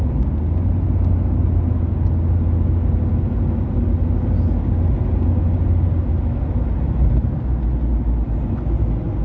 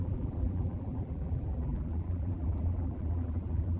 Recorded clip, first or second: first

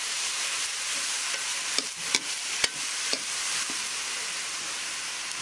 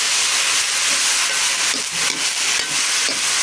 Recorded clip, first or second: second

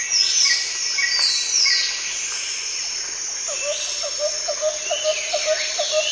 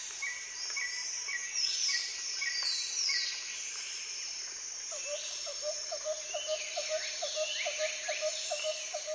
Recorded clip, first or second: first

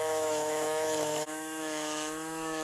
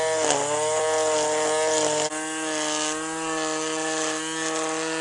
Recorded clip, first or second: second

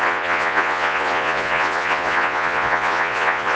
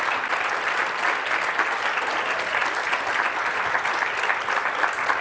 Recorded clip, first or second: second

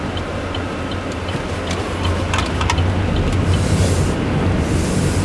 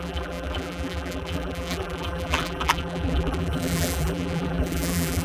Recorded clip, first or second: first